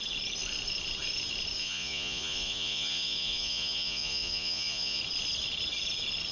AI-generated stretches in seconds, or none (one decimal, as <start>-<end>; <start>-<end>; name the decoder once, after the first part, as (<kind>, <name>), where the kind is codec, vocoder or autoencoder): 1.6-5.0 (vocoder, Vocos)